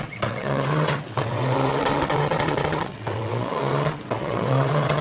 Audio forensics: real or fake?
fake